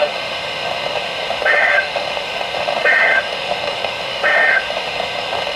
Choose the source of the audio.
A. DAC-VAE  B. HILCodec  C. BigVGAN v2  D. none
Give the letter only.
A